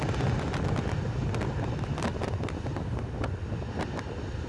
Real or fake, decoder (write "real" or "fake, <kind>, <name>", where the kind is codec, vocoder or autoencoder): real